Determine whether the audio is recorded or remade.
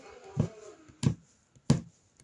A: recorded